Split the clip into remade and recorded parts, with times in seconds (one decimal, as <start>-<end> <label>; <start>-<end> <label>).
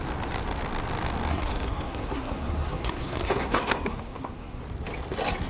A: 0.0-1.3 recorded; 1.3-4.6 remade; 4.6-5.5 recorded